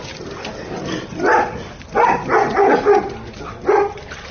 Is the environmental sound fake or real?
fake